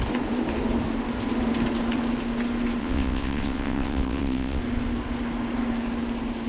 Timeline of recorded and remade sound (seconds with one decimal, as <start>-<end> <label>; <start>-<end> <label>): 0.0-2.8 recorded; 2.8-4.6 remade; 4.6-6.5 recorded